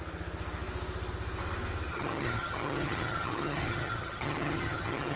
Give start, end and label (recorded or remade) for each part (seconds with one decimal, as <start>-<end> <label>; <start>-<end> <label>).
0.0-1.9 recorded; 1.9-5.2 remade